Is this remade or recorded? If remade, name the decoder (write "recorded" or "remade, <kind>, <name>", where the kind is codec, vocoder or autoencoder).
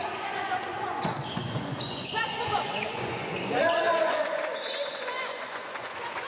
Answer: remade, vocoder, Vocos